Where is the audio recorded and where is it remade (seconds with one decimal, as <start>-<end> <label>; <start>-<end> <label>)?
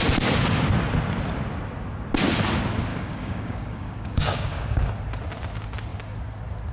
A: 0.0-2.9 recorded; 2.9-4.9 remade; 4.9-6.7 recorded